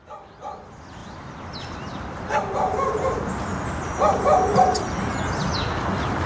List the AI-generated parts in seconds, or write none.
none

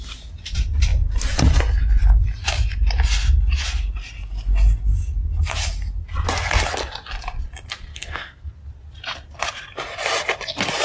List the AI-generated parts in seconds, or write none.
7.9-8.5

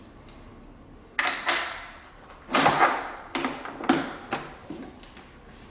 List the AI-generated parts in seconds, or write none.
none

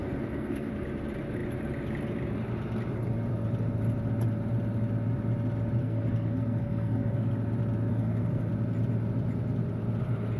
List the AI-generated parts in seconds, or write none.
0.0-0.7; 5.8-7.3; 7.9-8.5

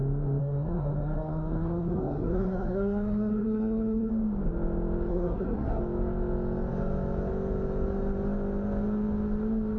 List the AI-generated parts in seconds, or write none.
0.4-4.1; 5.1-5.8

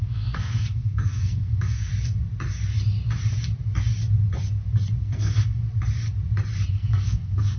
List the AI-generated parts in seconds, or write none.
0.0-1.9; 5.0-5.6; 6.7-7.6